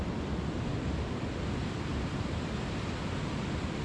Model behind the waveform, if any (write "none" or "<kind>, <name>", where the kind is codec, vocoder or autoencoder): none